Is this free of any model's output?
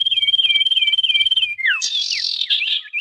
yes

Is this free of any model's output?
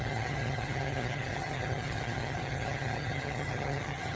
no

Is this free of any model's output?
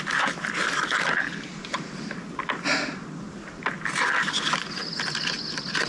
yes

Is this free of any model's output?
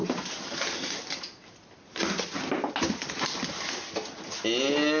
yes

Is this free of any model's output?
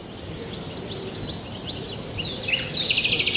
yes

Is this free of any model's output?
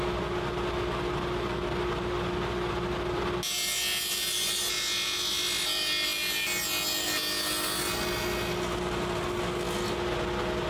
yes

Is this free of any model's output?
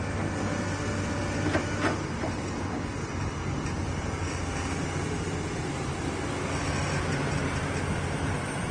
yes